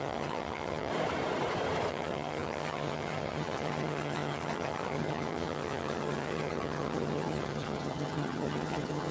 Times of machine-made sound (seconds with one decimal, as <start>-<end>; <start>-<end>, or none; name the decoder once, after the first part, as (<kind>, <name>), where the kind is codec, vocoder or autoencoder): 0.0-0.9 (vocoder, HiFi-GAN); 1.9-9.1